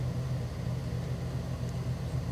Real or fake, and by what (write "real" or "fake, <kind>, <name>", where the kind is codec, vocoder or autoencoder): real